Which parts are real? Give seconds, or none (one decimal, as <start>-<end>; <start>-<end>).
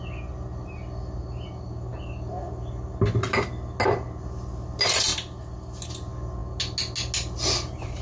0.0-8.0